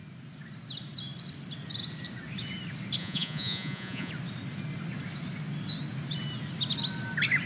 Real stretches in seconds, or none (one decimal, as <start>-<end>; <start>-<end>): 0.0-3.0; 4.1-7.5